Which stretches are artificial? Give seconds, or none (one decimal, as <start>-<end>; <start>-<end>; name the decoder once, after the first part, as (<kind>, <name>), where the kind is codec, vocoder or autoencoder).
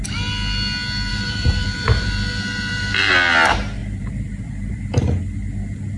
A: 1.1-3.1 (vocoder, BigVGAN v2); 3.8-5.0